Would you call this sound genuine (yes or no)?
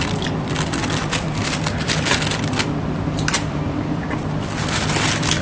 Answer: yes